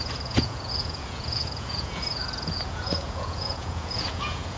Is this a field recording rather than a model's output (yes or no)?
no